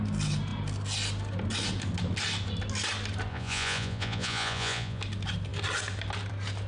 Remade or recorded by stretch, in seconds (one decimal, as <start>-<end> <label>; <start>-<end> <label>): 0.0-3.3 recorded; 3.3-5.0 remade; 5.0-6.7 recorded

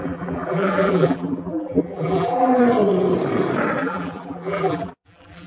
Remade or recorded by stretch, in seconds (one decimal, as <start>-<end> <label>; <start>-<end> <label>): 0.0-2.6 remade; 2.6-3.8 recorded; 3.8-5.5 remade

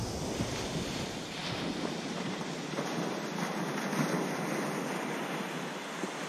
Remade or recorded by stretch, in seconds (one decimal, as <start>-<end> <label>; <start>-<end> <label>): 0.0-6.3 recorded

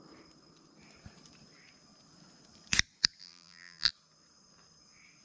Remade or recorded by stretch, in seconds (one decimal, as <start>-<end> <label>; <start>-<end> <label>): 0.0-3.2 recorded; 3.2-3.9 remade; 3.9-5.2 recorded

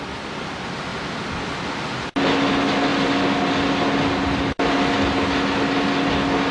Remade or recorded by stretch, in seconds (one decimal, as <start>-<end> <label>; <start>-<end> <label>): 0.0-6.5 recorded

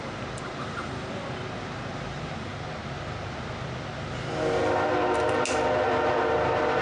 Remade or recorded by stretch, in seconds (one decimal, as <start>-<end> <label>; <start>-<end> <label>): 0.0-2.5 remade; 2.5-6.8 recorded

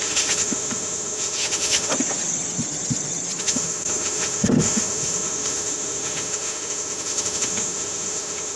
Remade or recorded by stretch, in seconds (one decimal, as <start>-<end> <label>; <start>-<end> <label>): 0.0-1.9 remade; 1.9-3.4 recorded; 3.4-8.6 remade

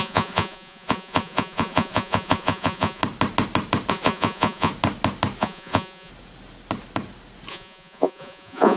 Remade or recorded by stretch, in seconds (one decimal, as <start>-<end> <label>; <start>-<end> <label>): 0.0-3.0 remade; 3.0-3.9 recorded; 3.9-4.7 remade; 4.7-5.4 recorded; 5.4-6.1 remade; 6.1-7.5 recorded; 7.5-8.8 remade